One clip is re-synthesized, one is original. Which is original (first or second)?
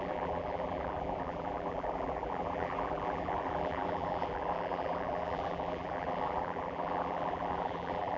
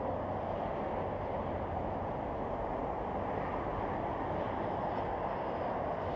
second